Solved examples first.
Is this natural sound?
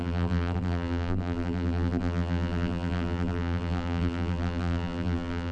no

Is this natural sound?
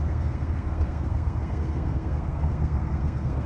no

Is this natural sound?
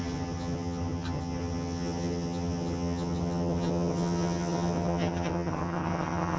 no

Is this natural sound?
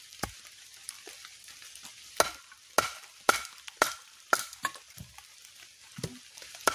yes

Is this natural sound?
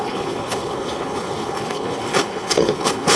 no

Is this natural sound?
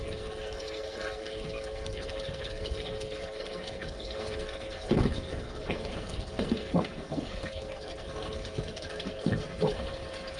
no